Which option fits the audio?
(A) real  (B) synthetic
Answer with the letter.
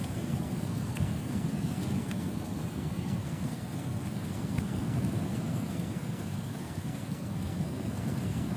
B